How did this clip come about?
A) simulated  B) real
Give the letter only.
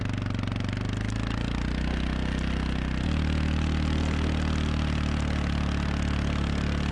B